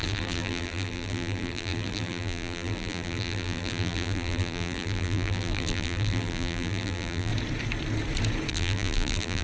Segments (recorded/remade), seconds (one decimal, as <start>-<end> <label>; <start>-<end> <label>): 0.0-7.3 remade; 7.3-8.5 recorded; 8.5-9.4 remade